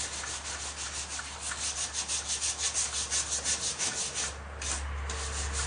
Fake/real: real